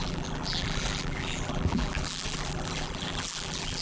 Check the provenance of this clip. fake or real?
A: fake